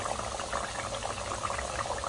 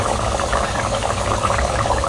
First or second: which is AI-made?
second